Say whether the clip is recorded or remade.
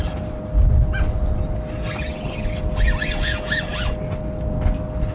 recorded